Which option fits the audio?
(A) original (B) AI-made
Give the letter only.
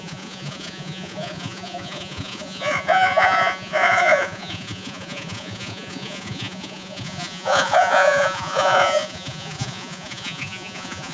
B